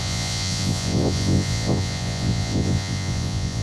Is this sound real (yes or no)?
no